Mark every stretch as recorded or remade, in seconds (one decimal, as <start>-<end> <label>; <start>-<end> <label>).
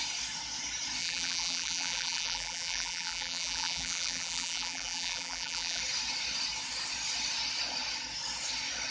0.0-1.0 recorded; 1.0-5.8 remade; 5.8-8.9 recorded